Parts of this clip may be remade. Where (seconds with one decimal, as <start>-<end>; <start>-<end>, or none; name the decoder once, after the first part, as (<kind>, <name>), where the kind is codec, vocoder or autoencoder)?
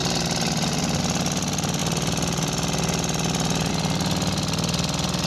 none